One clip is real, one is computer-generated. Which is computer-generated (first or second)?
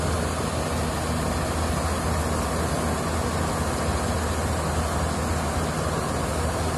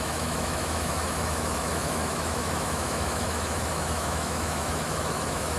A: second